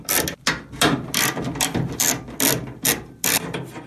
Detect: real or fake real